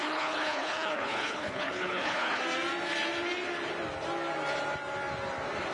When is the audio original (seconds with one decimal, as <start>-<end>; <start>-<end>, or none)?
2.4-5.7